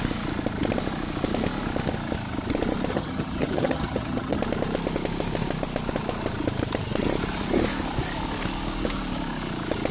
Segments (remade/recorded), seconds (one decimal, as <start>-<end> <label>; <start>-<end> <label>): 0.0-2.9 recorded; 2.9-4.4 remade; 4.4-9.9 recorded